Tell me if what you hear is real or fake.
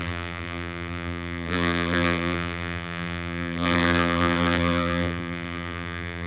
fake